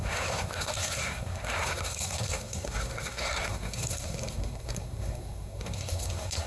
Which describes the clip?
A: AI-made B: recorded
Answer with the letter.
A